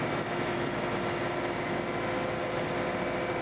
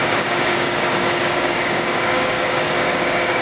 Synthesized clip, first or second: second